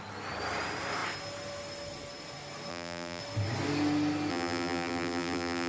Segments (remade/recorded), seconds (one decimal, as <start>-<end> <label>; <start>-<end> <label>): 0.0-2.7 recorded; 2.7-3.2 remade; 3.2-4.3 recorded; 4.3-5.7 remade